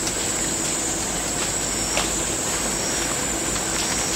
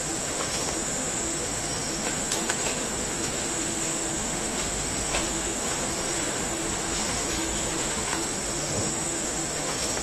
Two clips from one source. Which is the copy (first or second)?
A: second